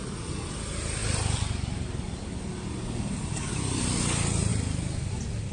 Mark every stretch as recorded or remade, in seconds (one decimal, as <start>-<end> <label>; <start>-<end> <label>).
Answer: 0.0-5.5 recorded